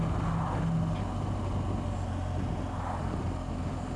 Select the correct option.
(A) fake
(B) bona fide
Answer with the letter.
B